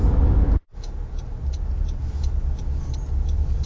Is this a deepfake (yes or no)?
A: no